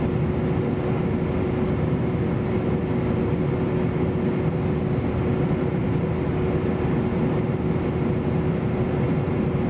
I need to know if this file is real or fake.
real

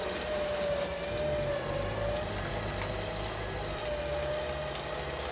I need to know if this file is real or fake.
real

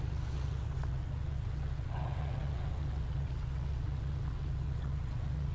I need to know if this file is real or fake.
fake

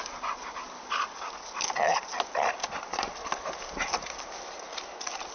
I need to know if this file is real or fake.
real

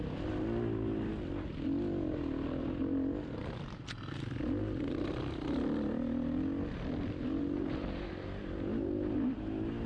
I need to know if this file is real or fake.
real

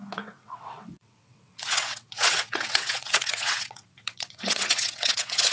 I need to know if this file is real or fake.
fake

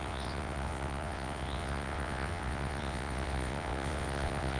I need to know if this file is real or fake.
fake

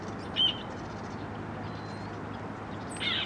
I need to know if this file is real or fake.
real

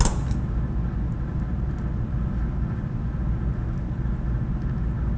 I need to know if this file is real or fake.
real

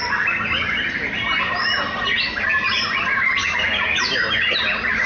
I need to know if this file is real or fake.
real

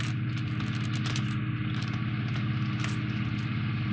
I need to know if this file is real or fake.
real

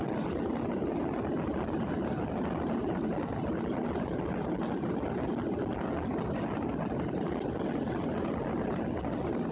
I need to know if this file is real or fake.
real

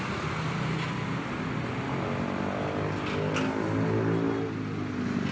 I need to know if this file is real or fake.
real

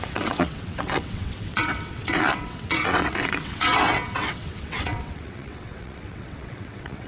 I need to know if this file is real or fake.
fake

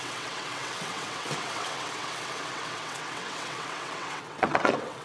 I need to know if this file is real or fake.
fake